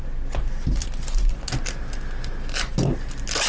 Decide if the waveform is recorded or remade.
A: recorded